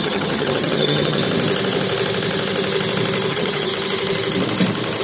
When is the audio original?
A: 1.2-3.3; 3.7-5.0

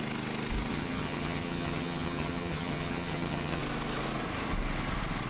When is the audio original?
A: 0.0-0.7; 3.6-5.3

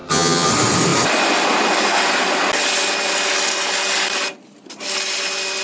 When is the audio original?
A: 0.5-5.6

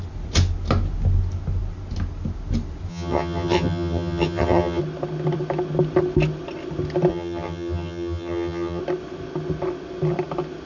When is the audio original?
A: 0.0-2.9; 4.8-7.1; 8.8-10.7

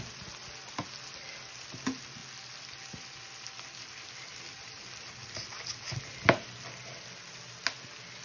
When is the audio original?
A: 0.0-8.2